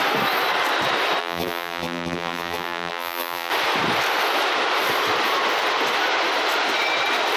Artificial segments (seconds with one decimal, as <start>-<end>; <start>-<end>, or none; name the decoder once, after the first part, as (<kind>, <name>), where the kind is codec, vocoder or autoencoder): 1.2-3.5 (vocoder, BigVGAN v2)